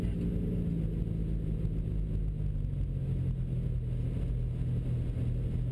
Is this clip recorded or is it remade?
recorded